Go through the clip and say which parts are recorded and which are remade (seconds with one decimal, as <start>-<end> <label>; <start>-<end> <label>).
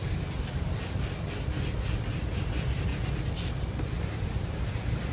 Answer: 0.0-5.1 recorded